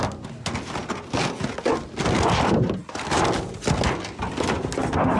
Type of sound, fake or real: real